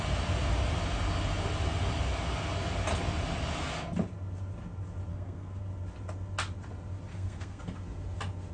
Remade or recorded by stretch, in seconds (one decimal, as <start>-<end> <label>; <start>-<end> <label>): 0.0-5.1 recorded; 5.1-5.6 remade; 5.6-7.1 recorded; 7.1-7.6 remade; 7.6-8.5 recorded